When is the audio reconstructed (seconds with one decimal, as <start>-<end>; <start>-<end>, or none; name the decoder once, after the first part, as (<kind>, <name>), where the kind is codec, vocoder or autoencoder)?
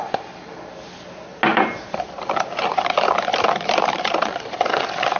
1.5-4.6 (vocoder, BigVGAN v2)